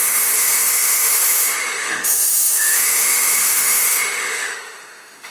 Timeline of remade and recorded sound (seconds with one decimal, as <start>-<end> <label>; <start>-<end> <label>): 0.0-5.3 remade